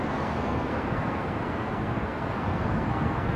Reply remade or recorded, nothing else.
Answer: remade